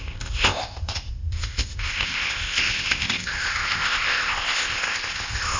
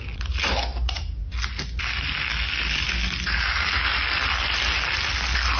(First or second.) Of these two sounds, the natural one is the second